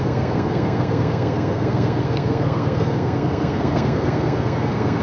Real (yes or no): no